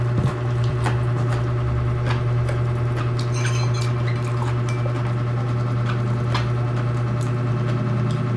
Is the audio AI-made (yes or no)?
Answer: no